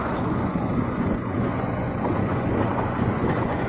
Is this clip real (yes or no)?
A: no